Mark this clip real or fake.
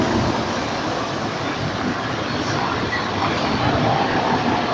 real